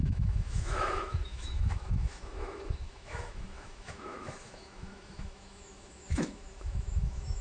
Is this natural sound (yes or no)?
no